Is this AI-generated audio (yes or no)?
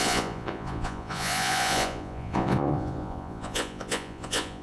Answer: yes